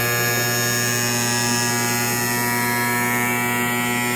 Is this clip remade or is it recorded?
recorded